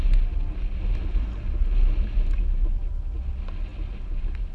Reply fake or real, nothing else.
real